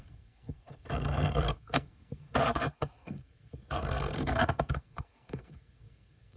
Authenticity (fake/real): fake